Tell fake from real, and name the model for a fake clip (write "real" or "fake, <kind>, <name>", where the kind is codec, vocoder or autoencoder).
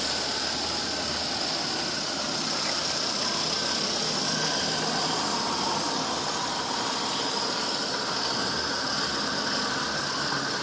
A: real